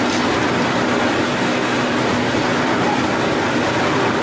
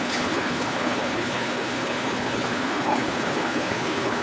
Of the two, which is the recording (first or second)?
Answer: first